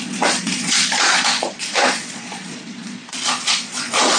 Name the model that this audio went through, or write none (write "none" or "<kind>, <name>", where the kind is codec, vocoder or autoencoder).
vocoder, Vocos